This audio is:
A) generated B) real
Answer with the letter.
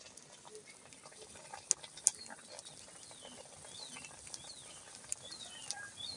B